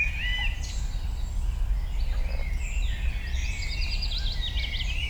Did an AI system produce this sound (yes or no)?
no